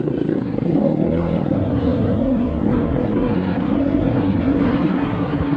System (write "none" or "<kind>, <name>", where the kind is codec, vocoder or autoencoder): codec, SNAC